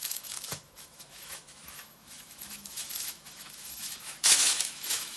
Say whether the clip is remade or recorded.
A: remade